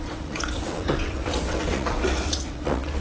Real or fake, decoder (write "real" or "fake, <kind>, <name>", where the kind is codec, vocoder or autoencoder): fake, vocoder, WaveNeXt